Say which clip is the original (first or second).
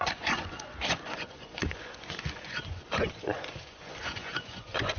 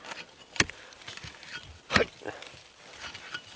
second